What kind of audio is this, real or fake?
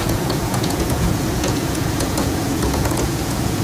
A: fake